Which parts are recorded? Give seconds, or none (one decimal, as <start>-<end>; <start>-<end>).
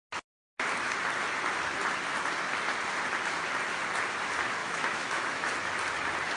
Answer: 0.0-4.6; 5.5-6.4